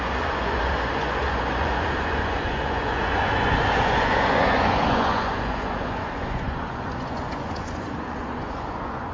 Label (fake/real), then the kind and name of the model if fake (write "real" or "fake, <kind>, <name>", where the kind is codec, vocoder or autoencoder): fake, vocoder, Vocos